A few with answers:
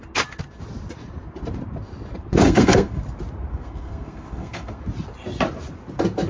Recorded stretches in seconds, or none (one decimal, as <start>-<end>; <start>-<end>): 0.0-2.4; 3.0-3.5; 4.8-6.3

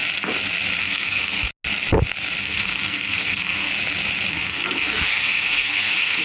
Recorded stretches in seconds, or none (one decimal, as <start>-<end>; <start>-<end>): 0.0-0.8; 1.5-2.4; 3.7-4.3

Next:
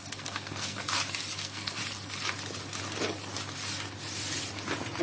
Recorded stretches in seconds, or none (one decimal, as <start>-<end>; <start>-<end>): 0.9-1.4; 1.8-5.0